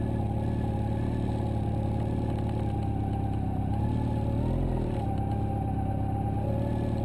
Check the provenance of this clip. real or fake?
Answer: real